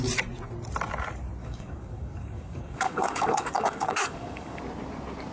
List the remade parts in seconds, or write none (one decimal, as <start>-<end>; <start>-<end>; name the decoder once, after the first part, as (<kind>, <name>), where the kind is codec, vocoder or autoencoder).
1.4-4.6 (codec, DAC)